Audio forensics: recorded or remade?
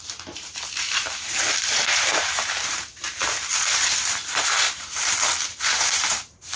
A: remade